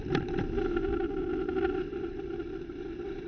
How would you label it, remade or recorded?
recorded